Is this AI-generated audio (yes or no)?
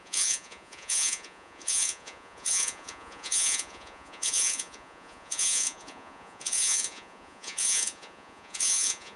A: yes